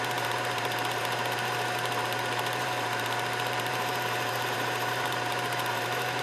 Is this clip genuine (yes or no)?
no